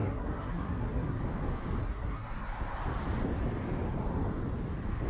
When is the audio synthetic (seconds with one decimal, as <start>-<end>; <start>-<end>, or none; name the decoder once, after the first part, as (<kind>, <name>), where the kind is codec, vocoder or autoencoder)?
0.0-1.2 (codec, SNAC); 1.8-2.5

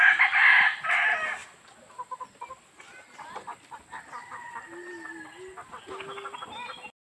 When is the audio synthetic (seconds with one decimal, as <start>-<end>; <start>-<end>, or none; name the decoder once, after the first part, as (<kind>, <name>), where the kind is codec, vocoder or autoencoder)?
none